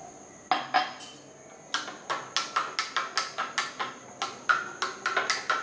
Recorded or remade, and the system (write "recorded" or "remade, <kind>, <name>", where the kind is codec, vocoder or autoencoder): recorded